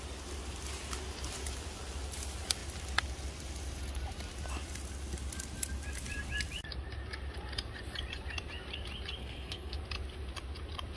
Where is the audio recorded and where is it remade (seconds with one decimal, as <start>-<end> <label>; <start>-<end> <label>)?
0.0-9.2 recorded; 9.2-9.8 remade; 9.8-11.0 recorded